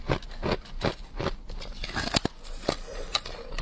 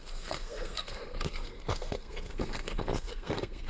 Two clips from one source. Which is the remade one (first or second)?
second